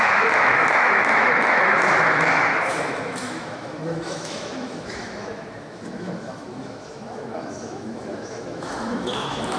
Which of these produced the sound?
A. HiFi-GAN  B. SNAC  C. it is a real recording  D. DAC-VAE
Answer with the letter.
D